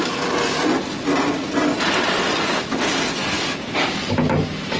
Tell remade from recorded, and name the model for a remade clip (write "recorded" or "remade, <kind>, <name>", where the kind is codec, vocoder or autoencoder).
recorded